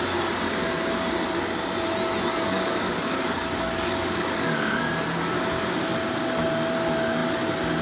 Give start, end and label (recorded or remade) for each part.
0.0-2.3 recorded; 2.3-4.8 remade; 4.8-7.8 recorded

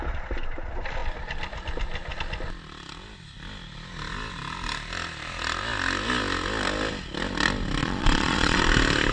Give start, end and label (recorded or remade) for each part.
0.0-7.8 recorded; 7.8-8.6 remade; 8.6-9.1 recorded

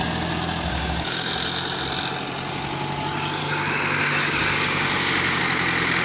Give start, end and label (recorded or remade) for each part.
0.0-0.7 recorded; 0.7-1.3 remade; 1.3-3.4 recorded; 3.4-5.4 remade; 5.4-6.0 recorded